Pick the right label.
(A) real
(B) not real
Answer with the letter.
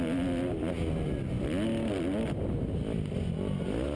A